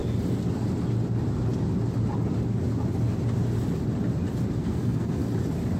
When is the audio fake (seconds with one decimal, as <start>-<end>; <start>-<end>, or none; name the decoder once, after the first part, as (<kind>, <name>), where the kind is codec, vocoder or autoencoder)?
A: 4.6-5.2 (codec, SNAC)